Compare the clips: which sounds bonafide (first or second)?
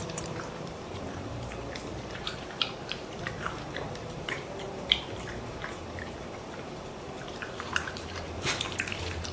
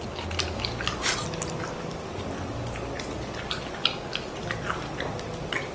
second